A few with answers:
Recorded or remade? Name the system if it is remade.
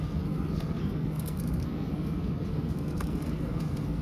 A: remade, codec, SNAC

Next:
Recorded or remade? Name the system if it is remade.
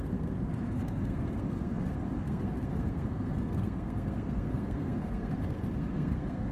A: remade, codec, SNAC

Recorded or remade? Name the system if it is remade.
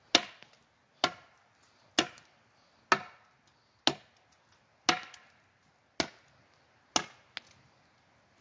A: recorded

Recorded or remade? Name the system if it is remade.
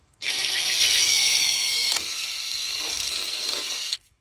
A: remade, codec, SNAC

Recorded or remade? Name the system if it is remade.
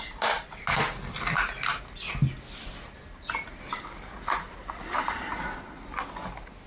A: recorded